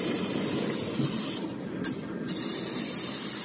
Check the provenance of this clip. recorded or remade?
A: recorded